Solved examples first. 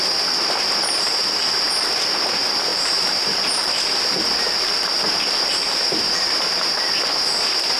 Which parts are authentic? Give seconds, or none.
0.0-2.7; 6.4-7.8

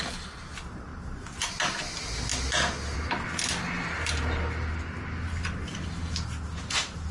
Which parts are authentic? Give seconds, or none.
0.0-2.3; 4.1-7.1

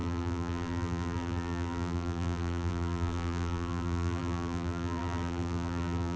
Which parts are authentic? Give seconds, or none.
none

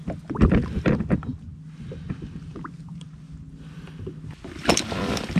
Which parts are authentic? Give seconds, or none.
0.0-5.4

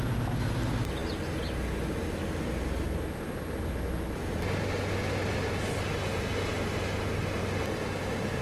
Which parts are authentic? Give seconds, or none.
0.0-8.4

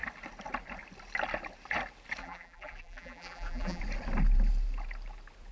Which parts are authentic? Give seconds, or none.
0.0-2.2; 3.8-5.5

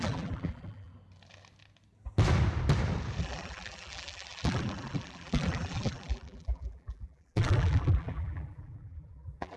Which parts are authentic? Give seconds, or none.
0.9-3.2